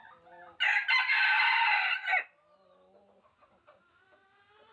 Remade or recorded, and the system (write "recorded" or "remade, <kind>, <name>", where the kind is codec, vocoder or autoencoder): recorded